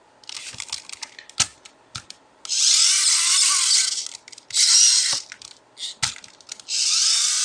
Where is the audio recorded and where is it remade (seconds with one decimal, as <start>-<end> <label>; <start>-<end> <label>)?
0.0-7.4 recorded